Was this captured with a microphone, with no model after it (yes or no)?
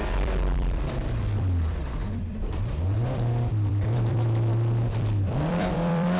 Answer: no